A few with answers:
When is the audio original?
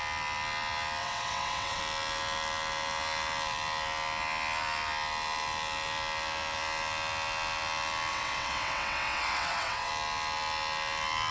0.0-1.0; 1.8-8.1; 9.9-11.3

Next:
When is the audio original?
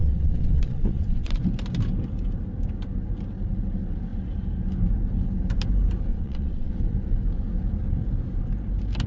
1.4-6.1; 6.7-9.1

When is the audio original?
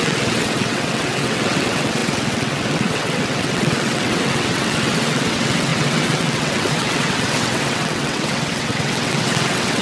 none